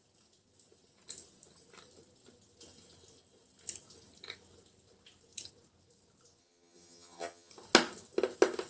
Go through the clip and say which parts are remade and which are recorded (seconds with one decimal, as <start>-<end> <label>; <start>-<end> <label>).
0.0-6.4 recorded; 6.4-7.5 remade; 7.5-8.7 recorded